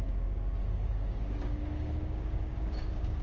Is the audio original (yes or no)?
no